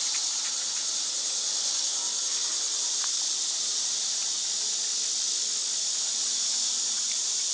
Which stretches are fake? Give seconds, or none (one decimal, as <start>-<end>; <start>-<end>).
0.0-1.4; 3.3-4.9; 5.8-7.5